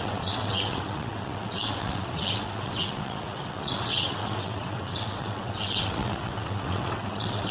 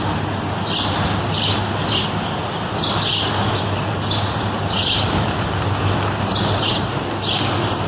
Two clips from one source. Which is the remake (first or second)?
first